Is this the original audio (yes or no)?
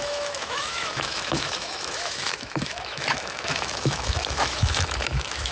no